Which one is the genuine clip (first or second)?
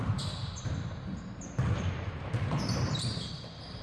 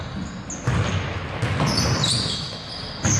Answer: second